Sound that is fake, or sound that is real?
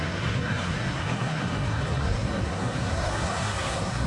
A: fake